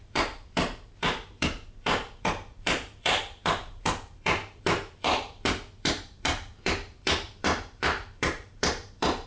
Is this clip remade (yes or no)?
yes